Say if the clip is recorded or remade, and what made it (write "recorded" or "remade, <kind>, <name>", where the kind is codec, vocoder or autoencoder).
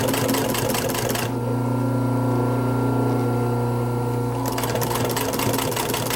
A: recorded